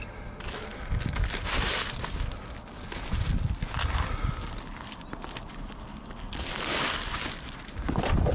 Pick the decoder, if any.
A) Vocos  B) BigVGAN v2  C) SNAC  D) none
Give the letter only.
D